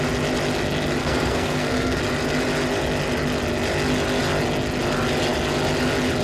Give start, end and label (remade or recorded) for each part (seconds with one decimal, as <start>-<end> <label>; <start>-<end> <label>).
0.0-1.0 recorded; 1.0-2.0 remade; 2.0-6.2 recorded